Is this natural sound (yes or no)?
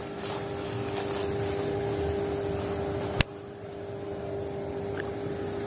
yes